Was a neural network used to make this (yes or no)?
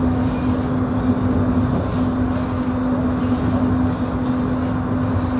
no